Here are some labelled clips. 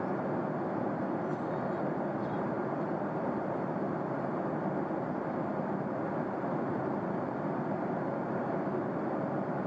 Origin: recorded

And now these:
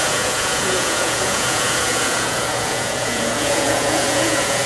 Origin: remade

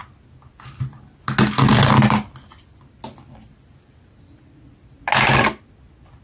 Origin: recorded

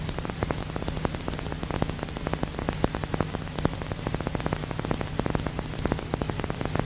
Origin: recorded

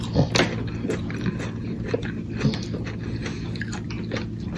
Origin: recorded